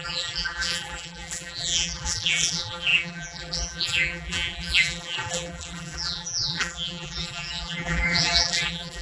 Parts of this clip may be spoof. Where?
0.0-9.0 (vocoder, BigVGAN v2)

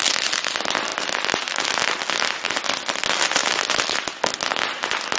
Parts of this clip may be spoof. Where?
none

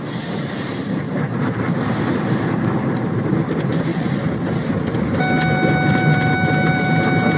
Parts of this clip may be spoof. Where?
0.0-3.9 (vocoder, BigVGAN v2); 5.9-7.4